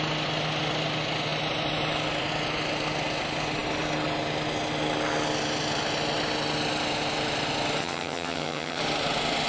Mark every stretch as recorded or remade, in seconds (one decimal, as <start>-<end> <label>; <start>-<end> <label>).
0.0-7.8 recorded; 7.8-8.8 remade; 8.8-9.5 recorded